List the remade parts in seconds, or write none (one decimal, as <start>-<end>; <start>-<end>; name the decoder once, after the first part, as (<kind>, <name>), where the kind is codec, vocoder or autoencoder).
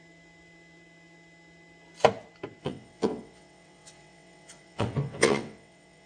2.6-6.1 (vocoder, WaveNeXt)